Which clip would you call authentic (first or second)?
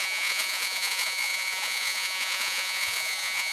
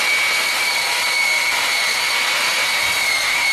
second